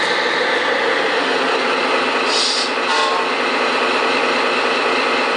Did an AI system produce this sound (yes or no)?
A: no